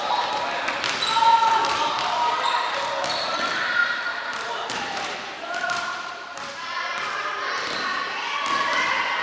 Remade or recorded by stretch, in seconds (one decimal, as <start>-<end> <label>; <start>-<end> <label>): 0.0-1.3 recorded; 1.3-2.5 remade; 2.5-3.8 recorded; 3.8-6.5 remade; 6.5-9.2 recorded